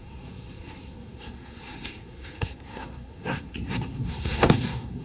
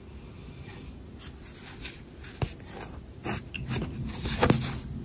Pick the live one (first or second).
second